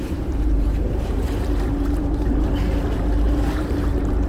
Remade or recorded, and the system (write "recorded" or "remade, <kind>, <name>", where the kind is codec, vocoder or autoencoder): remade, vocoder, BigVGAN v2